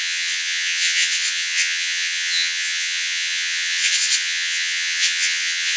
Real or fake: fake